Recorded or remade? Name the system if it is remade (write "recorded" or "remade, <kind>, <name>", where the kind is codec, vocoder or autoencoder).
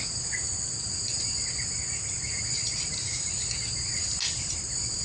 recorded